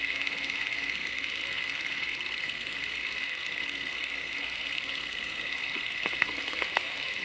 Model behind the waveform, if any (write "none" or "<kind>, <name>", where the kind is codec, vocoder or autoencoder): codec, SNAC